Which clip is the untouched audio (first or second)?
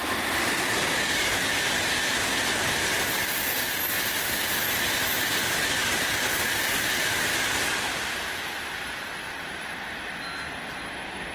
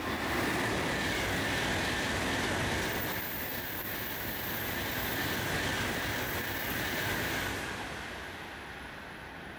second